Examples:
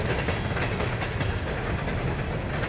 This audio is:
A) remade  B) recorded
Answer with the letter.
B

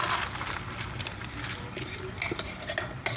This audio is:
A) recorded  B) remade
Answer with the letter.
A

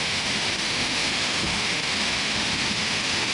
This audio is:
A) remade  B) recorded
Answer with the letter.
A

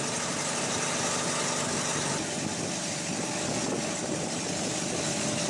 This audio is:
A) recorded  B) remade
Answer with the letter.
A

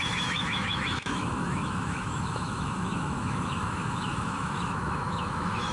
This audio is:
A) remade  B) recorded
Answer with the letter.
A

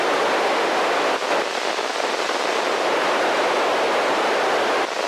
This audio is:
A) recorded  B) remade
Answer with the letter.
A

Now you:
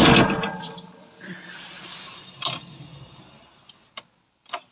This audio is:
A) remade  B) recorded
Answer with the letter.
B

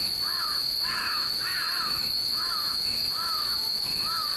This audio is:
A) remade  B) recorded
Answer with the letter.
A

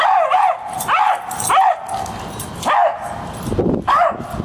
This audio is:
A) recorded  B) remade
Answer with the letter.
A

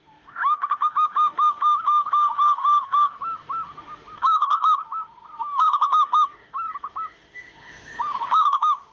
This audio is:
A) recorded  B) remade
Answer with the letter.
B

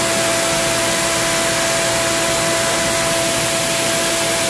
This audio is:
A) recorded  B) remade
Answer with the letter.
A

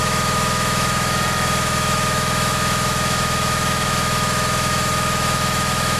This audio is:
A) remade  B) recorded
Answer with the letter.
A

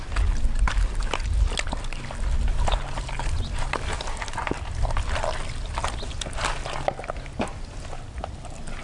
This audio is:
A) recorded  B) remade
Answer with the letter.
A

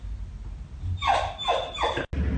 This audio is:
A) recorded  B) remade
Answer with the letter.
A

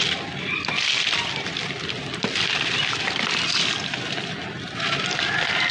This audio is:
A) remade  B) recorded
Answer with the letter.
B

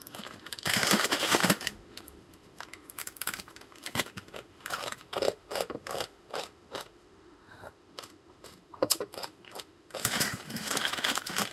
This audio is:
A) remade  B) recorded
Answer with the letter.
A